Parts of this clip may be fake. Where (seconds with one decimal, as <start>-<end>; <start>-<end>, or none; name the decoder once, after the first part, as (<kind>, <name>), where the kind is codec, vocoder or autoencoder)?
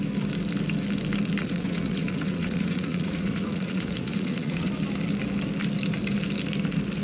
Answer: 1.4-4.7 (vocoder, Vocos)